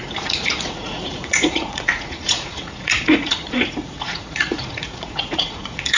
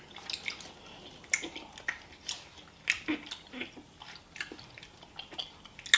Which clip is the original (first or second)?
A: second